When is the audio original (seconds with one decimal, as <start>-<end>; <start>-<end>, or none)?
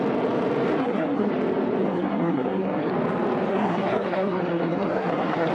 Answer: 0.0-0.8; 1.3-1.8; 2.9-3.5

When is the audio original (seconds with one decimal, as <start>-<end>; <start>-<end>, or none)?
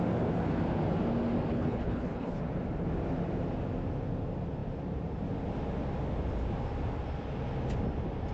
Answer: 0.0-1.5; 2.4-8.3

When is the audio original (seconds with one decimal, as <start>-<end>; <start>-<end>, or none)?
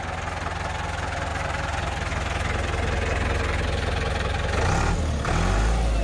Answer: 0.0-1.3; 2.1-6.0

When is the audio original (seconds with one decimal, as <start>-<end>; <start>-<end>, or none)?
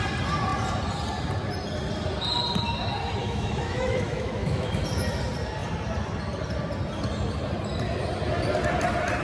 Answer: 0.0-3.2; 4.8-9.2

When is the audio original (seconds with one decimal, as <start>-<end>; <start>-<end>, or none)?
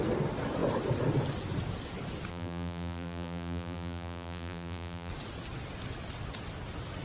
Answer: 0.0-2.3; 5.1-7.0